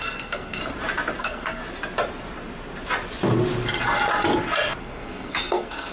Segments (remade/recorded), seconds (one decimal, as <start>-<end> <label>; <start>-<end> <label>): 0.0-0.6 remade; 0.6-1.2 recorded; 1.2-1.6 remade; 1.6-4.8 recorded; 4.8-5.9 remade